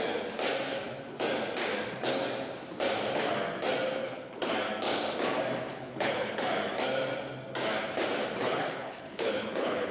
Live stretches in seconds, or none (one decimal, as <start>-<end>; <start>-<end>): 0.0-4.0; 4.5-5.7; 6.4-8.4

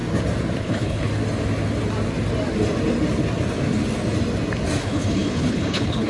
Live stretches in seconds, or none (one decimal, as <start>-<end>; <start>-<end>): 0.0-0.6; 1.1-4.8